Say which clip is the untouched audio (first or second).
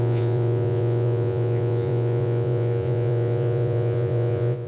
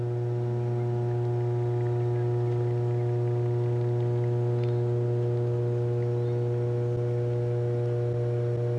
second